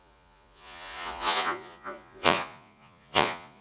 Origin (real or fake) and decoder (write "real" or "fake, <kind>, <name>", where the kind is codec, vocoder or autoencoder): fake, vocoder, Vocos